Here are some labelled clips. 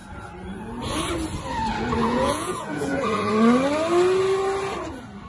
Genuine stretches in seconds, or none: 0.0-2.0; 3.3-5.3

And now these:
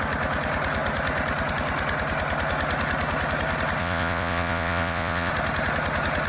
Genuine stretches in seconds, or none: 0.0-3.8; 5.3-6.3

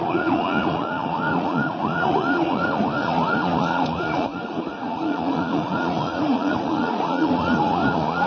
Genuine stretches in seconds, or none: none